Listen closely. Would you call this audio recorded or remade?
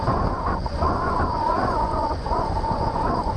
remade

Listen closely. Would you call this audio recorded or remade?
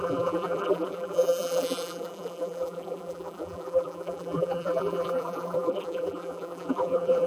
remade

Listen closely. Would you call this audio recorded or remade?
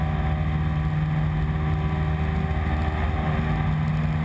recorded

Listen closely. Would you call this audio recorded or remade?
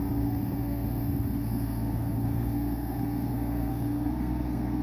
remade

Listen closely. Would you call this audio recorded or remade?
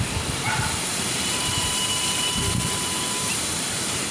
remade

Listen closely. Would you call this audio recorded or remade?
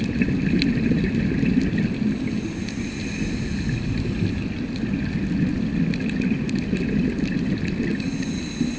recorded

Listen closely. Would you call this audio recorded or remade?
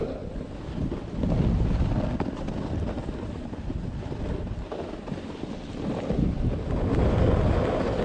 recorded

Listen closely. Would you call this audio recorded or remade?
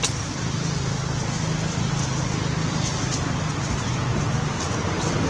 recorded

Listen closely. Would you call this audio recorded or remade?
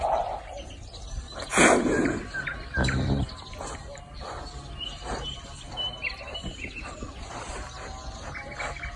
recorded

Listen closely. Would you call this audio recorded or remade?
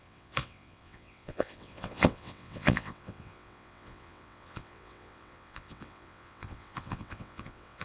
remade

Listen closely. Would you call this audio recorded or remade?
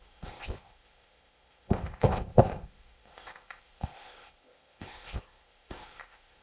remade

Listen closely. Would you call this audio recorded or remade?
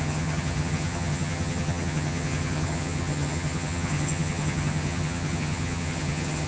remade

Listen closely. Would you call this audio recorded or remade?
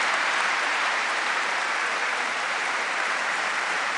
remade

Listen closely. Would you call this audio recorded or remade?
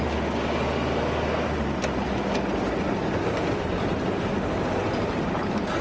recorded